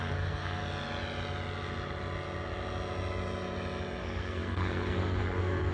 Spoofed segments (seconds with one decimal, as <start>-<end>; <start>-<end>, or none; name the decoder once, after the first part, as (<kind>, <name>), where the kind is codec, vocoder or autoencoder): 0.0-0.6 (codec, SNAC); 4.0-5.7